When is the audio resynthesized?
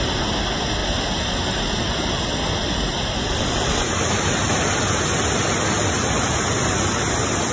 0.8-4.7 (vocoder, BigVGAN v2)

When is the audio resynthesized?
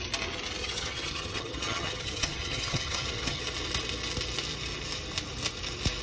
0.6-3.4 (vocoder, HiFi-GAN)